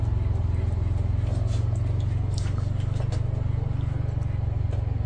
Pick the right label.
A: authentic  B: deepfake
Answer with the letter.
A